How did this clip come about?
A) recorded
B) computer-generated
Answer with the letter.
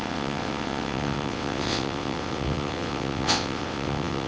B